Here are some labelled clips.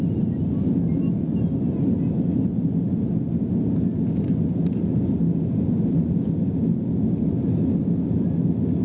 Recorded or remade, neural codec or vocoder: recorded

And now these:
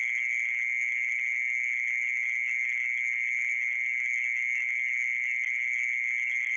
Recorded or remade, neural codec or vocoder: recorded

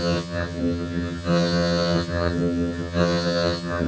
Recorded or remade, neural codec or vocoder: remade, vocoder, HiFi-GAN